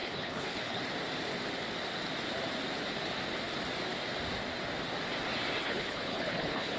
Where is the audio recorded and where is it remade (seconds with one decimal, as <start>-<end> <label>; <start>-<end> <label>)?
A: 0.0-0.8 remade; 0.8-5.6 recorded; 5.6-6.8 remade